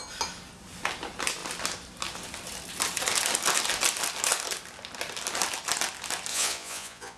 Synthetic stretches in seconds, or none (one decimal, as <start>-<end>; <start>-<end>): 6.3-7.2